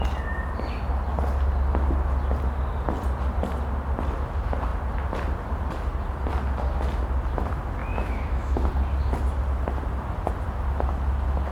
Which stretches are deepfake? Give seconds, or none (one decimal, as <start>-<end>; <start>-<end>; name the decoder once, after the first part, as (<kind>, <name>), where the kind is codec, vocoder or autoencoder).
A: 7.8-8.7 (autoencoder, DAC-VAE)